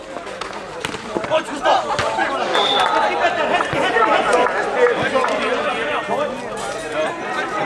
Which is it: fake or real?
real